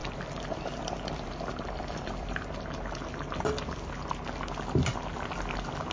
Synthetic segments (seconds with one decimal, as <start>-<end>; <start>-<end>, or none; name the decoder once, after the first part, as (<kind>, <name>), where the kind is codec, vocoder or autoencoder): 0.0-2.8 (vocoder, BigVGAN v2)